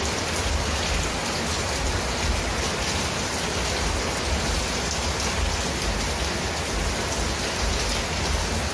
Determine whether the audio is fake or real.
real